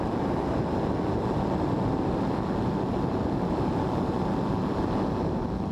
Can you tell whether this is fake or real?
fake